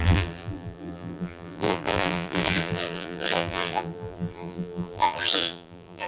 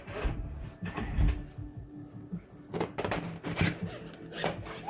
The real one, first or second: second